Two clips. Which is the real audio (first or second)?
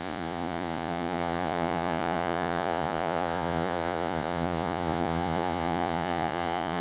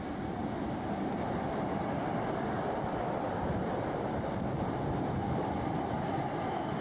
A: second